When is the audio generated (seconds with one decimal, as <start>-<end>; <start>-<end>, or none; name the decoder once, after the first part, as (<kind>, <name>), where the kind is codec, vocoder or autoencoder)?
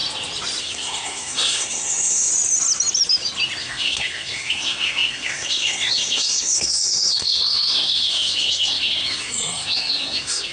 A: 0.6-2.3 (codec, SNAC); 3.6-10.5